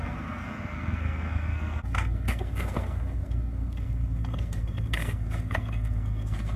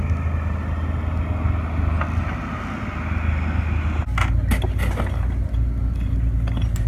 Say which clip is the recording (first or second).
second